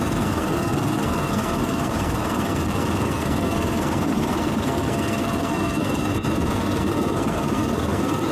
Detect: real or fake fake